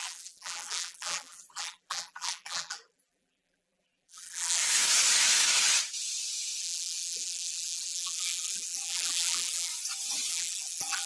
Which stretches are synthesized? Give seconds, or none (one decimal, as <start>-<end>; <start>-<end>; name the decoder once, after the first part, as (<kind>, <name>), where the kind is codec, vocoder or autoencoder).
0.0-4.6 (vocoder, BigVGAN v2); 6.6-9.7; 10.3-11.1